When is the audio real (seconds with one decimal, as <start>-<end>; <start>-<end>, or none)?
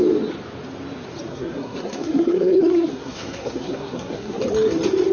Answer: 0.0-1.3; 4.4-5.1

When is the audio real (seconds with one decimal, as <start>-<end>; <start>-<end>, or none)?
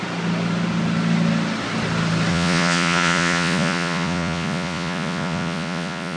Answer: 0.0-2.3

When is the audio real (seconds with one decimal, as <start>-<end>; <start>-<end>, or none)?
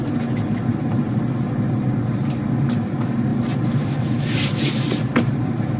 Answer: 0.0-0.7; 1.2-3.3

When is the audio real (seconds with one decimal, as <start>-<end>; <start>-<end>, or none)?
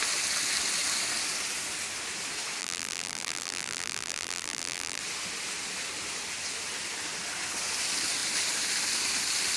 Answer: 0.0-2.6; 5.0-9.6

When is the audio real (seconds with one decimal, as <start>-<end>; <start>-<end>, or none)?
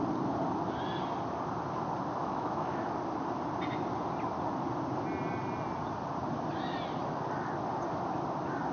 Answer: 0.0-2.2; 2.9-8.7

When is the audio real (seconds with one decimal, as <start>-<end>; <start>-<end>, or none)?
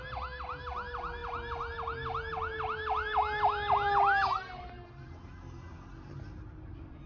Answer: 0.0-7.1